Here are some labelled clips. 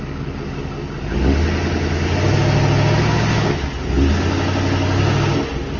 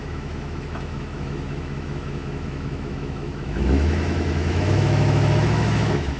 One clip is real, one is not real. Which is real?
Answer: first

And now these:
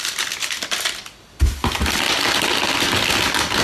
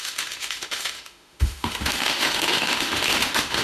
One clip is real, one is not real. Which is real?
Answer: first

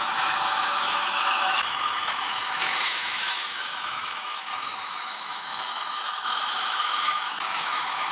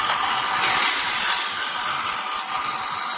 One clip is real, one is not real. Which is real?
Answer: second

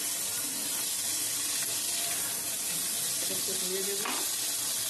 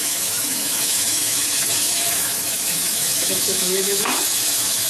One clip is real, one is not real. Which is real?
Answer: first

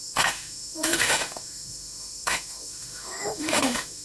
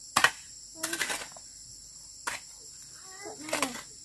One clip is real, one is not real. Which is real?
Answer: second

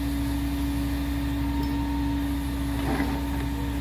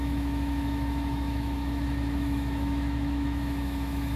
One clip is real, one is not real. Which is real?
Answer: first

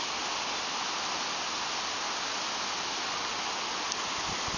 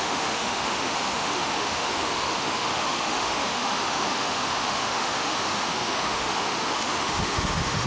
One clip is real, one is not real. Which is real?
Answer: first